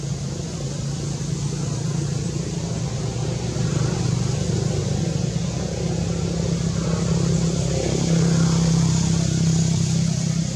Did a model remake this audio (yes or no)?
no